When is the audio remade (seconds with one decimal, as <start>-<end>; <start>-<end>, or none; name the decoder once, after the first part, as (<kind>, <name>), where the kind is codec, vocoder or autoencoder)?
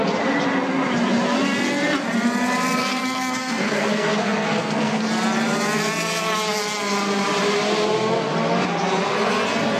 2.8-5.0 (codec, SNAC)